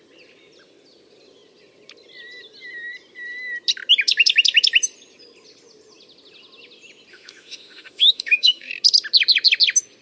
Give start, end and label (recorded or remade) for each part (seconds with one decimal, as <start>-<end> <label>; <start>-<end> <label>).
0.0-7.1 recorded; 7.1-8.7 remade; 8.7-10.0 recorded

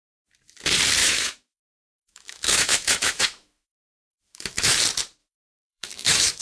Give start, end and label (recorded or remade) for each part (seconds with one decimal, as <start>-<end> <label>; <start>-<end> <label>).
0.0-1.0 recorded; 1.0-4.8 remade; 4.8-5.2 recorded; 5.2-6.4 remade

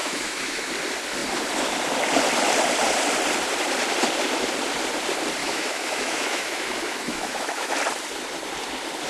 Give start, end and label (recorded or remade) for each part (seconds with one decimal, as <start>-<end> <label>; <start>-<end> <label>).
0.0-0.7 remade; 0.7-5.4 recorded; 5.4-7.7 remade; 7.7-9.1 recorded

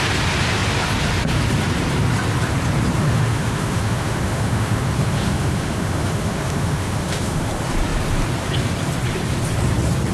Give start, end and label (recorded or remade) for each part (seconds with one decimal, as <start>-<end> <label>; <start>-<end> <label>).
0.0-3.0 recorded; 3.0-7.5 remade; 7.5-10.1 recorded

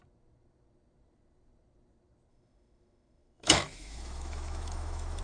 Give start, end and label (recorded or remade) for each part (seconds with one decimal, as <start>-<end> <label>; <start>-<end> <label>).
0.0-2.3 recorded; 2.3-5.2 remade

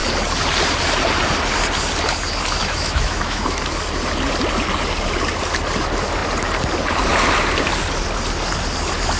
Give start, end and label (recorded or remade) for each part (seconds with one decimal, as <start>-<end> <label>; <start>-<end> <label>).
0.0-2.6 recorded; 2.6-3.6 remade; 3.6-9.2 recorded